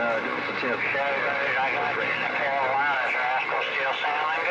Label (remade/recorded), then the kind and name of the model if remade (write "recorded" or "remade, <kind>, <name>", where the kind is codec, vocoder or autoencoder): recorded